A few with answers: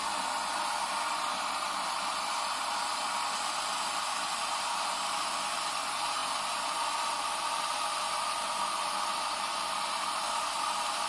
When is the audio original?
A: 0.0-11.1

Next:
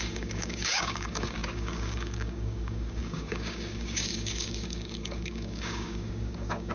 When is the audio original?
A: none

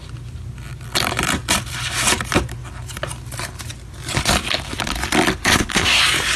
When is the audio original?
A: 0.0-5.4; 6.0-6.4

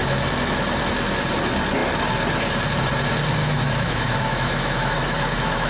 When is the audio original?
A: 0.0-3.4

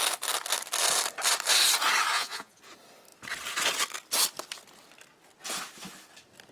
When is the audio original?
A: 0.0-2.1; 2.6-6.5

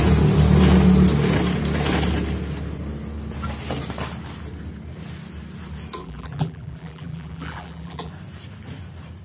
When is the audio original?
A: 0.0-6.0; 8.1-9.2